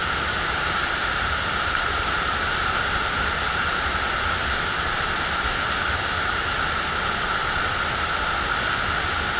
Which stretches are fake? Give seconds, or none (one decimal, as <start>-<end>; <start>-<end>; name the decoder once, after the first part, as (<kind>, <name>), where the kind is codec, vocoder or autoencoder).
none